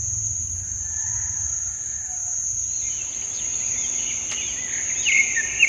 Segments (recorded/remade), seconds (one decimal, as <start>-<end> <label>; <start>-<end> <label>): 0.0-5.7 remade